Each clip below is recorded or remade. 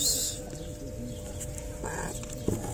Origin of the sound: recorded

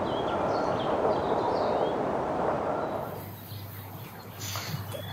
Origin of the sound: recorded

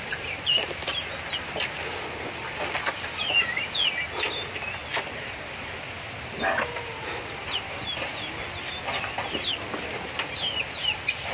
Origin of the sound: recorded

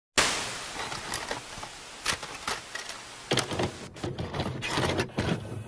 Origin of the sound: recorded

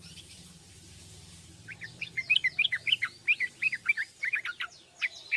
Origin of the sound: remade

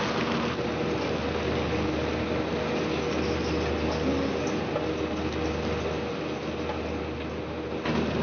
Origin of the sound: recorded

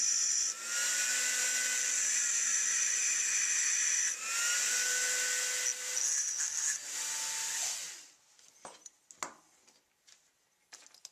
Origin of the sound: recorded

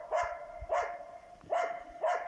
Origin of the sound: recorded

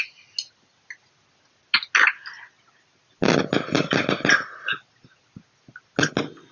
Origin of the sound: recorded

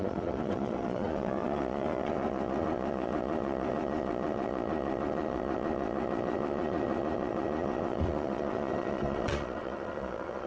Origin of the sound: remade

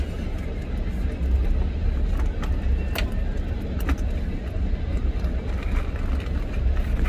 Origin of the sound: recorded